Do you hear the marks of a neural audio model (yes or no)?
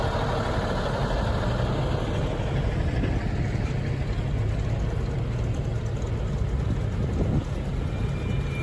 no